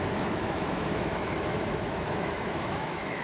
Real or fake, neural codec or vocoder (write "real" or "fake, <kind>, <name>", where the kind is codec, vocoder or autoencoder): fake, autoencoder, DAC-VAE